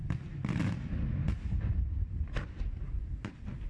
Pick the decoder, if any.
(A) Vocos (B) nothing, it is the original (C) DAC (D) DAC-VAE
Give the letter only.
B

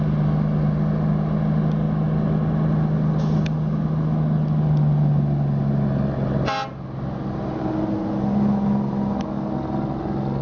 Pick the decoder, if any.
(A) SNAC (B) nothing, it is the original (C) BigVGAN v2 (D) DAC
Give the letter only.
B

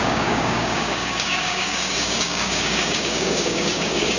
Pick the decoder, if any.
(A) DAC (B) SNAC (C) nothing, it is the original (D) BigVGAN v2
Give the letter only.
A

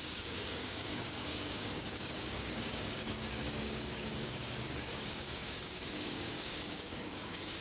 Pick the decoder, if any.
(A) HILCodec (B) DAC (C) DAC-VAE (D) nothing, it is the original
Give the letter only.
B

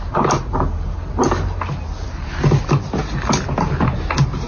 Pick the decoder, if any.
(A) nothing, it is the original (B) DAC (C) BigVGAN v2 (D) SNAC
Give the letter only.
A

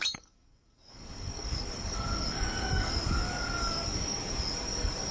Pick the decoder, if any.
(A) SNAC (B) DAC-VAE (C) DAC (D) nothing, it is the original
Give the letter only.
C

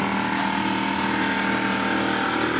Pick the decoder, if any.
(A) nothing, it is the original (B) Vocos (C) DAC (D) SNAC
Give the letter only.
A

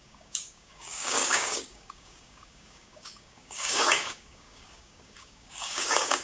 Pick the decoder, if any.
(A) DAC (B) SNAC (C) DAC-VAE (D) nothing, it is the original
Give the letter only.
A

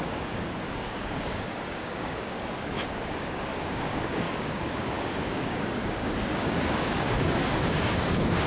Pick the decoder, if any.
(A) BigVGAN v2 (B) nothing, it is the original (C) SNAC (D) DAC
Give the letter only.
D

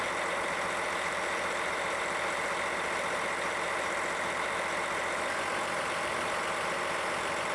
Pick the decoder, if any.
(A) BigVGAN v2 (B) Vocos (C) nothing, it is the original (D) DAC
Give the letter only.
C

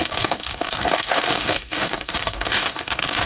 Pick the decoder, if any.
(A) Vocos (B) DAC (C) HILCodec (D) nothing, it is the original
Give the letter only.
B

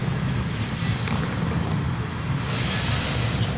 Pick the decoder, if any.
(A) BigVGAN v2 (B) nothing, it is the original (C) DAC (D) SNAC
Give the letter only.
B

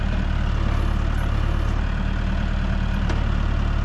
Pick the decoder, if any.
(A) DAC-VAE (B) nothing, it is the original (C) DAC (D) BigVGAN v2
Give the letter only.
B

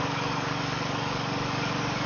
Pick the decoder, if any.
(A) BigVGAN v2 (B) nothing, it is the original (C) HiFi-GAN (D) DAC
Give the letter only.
D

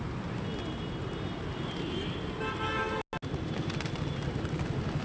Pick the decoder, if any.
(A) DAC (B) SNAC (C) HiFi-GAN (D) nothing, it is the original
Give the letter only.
D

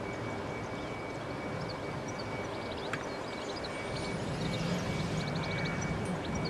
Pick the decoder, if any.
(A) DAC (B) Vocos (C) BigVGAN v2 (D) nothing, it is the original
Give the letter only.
D